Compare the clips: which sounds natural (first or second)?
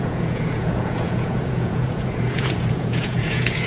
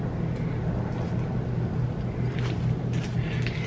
second